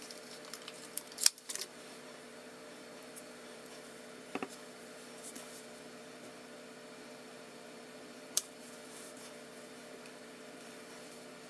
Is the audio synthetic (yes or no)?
yes